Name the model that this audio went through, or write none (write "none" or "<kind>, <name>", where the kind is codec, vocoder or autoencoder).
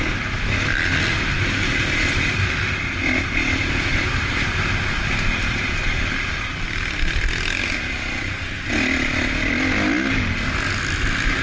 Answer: none